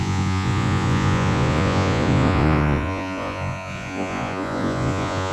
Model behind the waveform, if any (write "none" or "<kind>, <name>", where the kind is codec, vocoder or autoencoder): vocoder, Vocos